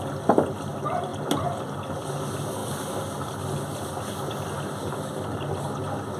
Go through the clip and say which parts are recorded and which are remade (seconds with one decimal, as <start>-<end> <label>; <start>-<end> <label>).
0.0-6.2 recorded